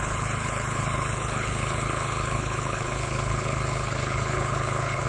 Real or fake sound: fake